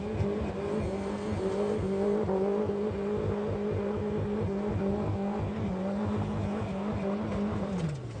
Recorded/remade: recorded